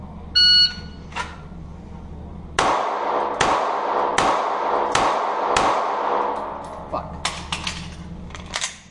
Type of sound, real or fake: real